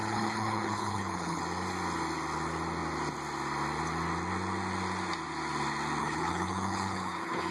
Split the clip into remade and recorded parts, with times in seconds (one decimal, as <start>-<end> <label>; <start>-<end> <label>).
0.0-1.4 remade; 1.4-6.0 recorded; 6.0-7.5 remade